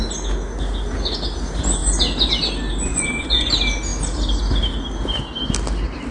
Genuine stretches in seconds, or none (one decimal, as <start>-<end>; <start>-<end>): 0.0-2.9; 3.5-6.1